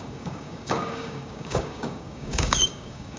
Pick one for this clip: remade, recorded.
remade